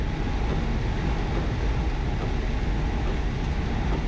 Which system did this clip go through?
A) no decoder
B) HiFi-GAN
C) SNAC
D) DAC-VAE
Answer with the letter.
A